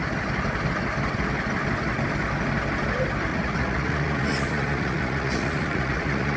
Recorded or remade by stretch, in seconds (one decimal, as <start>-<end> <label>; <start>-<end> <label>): 0.0-3.3 recorded; 3.3-6.4 remade